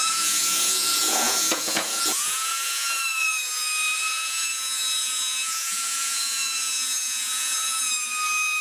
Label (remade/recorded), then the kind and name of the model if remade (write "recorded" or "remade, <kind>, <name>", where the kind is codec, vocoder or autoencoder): remade, vocoder, Vocos